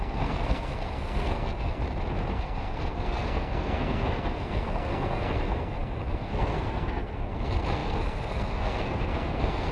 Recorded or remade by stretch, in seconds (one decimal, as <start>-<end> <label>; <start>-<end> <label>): 0.0-1.8 remade; 1.8-2.3 recorded; 2.3-9.7 remade